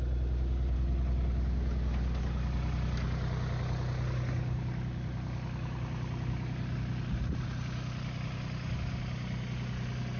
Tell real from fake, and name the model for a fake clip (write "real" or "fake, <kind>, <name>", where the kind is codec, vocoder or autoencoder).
real